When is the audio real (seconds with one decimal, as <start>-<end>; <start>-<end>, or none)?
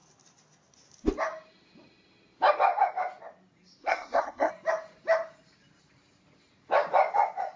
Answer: 0.0-3.8; 4.5-7.6